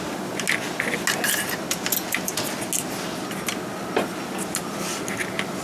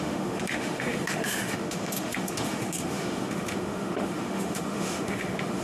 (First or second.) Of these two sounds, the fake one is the second